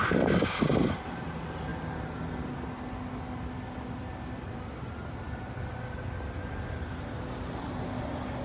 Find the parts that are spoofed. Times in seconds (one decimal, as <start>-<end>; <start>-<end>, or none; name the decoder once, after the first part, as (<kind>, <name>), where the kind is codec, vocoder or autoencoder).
none